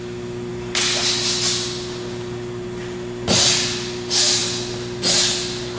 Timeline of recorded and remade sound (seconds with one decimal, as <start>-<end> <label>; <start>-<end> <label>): 0.0-5.8 recorded